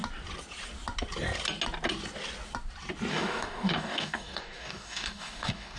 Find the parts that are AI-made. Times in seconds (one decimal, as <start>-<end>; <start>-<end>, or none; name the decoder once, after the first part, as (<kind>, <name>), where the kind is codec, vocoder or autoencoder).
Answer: 3.1-5.8 (codec, DAC)